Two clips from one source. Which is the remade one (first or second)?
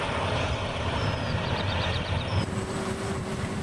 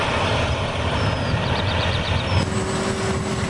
first